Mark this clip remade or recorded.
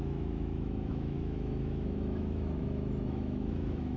remade